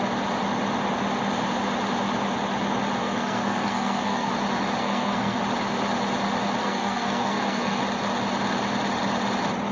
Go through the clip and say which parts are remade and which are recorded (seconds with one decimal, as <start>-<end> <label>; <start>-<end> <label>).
0.0-3.0 recorded; 3.0-4.3 remade; 4.3-4.8 recorded; 4.8-5.4 remade; 5.4-6.6 recorded; 6.6-7.8 remade; 7.8-9.7 recorded